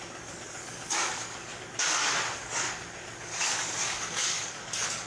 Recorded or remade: remade